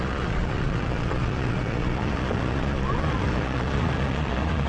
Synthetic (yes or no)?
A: yes